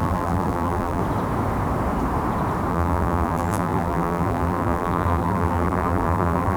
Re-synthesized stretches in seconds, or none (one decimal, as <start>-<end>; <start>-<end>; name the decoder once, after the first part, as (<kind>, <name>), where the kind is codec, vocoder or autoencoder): 0.0-1.0 (vocoder, BigVGAN v2); 2.7-6.6